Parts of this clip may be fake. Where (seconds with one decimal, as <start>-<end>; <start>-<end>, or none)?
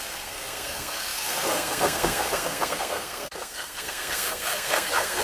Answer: 0.0-5.2